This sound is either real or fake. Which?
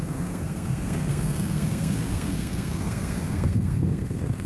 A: fake